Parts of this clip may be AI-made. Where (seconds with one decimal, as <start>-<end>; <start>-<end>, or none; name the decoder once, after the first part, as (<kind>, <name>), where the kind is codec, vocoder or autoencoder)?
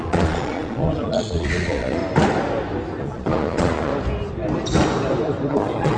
0.0-2.0 (vocoder, Vocos); 3.0-3.9; 5.5-6.0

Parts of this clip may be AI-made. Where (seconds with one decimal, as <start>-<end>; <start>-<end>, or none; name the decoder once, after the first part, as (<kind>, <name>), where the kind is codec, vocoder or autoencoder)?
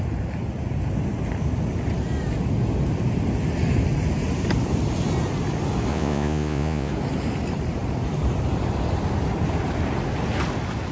5.9-6.9 (vocoder, Vocos)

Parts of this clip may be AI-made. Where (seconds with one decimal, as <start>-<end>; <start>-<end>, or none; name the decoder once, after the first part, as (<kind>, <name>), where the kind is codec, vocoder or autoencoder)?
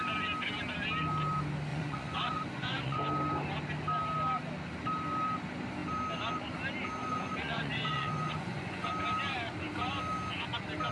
1.7-3.0 (vocoder, Vocos); 7.0-8.9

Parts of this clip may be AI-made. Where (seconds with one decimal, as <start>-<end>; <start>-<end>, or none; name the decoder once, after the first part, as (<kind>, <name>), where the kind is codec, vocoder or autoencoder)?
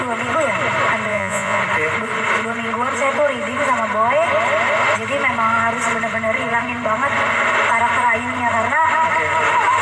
1.1-1.6 (vocoder, Vocos)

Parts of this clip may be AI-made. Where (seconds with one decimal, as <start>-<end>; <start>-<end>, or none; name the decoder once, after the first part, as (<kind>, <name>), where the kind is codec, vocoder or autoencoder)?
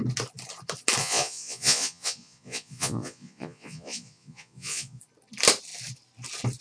1.0-5.0 (vocoder, Vocos)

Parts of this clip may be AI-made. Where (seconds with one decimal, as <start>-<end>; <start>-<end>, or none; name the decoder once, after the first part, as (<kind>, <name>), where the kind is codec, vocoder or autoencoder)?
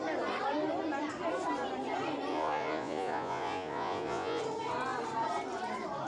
2.3-4.4 (vocoder, Vocos)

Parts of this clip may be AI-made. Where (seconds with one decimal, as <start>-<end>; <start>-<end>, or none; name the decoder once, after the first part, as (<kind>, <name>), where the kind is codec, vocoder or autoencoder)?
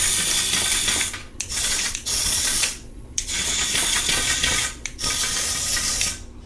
1.2-5.1 (vocoder, Vocos)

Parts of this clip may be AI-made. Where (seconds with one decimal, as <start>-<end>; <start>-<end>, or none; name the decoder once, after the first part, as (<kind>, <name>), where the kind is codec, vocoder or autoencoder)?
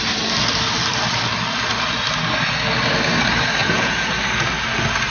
3.6-4.2 (vocoder, Vocos)